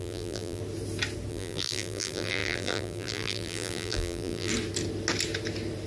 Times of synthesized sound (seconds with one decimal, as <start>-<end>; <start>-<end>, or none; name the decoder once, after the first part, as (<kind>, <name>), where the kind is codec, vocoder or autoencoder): 0.0-0.6 (vocoder, BigVGAN v2); 1.3-4.5